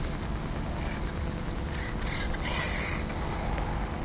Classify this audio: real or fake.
real